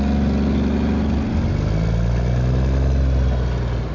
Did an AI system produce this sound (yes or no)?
no